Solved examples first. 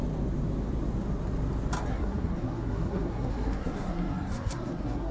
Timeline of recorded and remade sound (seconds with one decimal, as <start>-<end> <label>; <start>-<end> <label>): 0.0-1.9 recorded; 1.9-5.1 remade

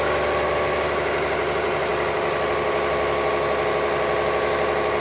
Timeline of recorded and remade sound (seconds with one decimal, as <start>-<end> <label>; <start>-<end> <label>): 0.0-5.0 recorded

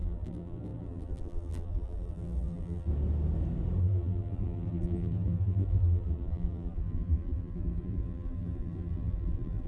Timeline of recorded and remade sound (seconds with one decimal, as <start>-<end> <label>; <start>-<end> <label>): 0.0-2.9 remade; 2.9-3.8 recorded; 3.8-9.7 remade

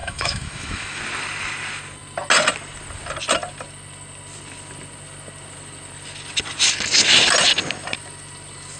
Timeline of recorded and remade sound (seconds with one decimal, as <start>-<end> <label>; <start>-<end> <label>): 0.0-1.0 remade; 1.0-8.8 recorded